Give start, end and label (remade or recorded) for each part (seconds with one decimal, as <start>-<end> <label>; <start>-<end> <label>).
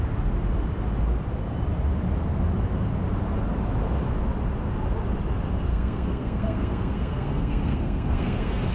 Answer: 0.0-5.7 recorded; 5.7-8.7 remade